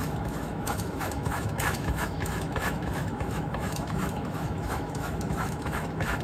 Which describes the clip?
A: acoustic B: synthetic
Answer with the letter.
B